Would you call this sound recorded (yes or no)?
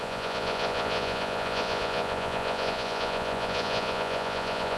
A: no